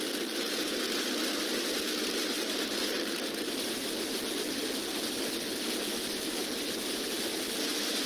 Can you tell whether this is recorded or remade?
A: recorded